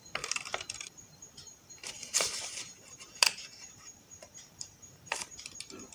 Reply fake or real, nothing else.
fake